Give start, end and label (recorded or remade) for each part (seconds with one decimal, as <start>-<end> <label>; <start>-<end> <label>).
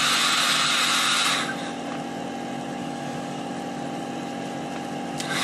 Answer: 0.0-2.8 recorded; 2.8-3.4 remade; 3.4-5.4 recorded